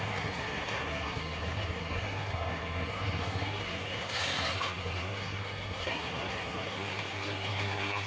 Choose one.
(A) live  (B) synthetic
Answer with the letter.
B